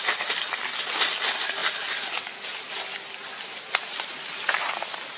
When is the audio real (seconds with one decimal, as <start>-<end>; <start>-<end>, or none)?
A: 0.0-5.2